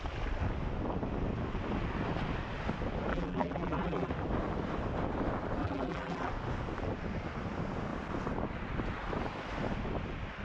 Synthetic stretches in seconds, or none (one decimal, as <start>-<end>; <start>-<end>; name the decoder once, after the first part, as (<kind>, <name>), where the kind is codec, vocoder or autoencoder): 3.1-4.1 (vocoder, BigVGAN v2); 5.6-6.3